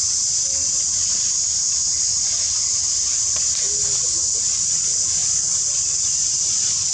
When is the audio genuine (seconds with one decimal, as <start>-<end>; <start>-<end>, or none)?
0.0-6.9